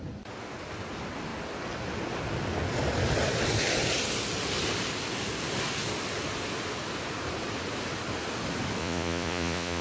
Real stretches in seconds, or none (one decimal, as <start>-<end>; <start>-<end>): 0.0-8.8